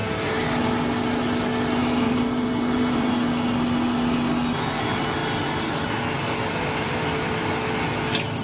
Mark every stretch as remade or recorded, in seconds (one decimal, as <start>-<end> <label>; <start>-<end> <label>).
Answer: 0.0-1.8 recorded; 1.8-3.1 remade; 3.1-8.4 recorded